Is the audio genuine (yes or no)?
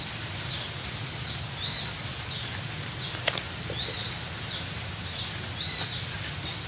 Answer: yes